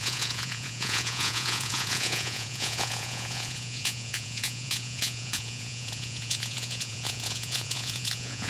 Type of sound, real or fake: fake